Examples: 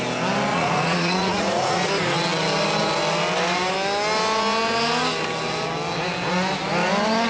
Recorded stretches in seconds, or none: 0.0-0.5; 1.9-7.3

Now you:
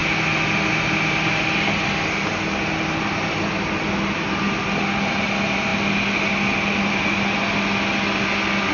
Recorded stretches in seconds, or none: 0.0-8.7

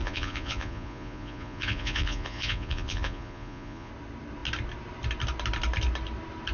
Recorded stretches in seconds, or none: 3.9-6.5

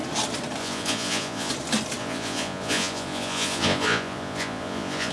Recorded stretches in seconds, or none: 0.0-0.6; 1.5-2.0

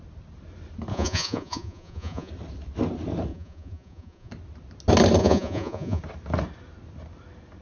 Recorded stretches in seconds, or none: 0.0-0.9; 2.3-3.3; 4.3-5.2; 6.0-7.6

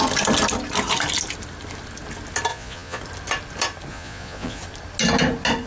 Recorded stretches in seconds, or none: 0.0-2.5; 3.0-3.9; 4.6-5.7

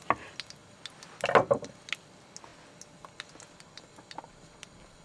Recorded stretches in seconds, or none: 0.0-5.0

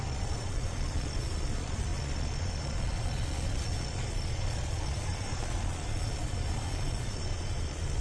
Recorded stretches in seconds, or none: none